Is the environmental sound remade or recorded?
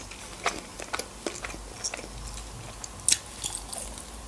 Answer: recorded